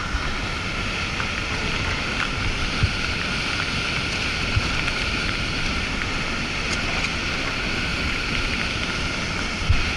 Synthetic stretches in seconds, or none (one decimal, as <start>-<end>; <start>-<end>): none

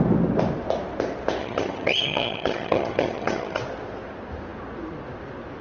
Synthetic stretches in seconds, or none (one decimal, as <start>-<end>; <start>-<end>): 1.4-3.6

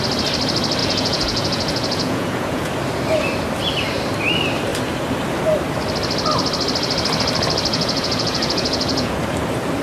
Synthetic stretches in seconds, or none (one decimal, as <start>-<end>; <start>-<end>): 0.8-2.7; 7.7-9.2

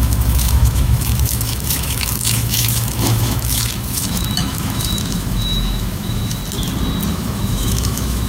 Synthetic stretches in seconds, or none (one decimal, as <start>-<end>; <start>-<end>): 0.0-6.4; 7.1-8.3

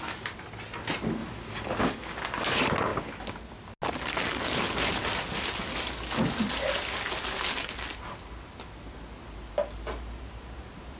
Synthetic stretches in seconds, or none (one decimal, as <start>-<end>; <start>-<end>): none

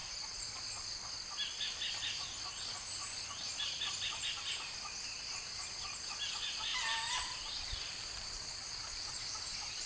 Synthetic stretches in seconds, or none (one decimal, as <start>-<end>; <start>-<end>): 6.7-9.9